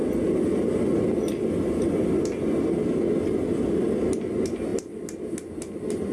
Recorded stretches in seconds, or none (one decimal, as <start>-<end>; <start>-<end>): 0.0-6.1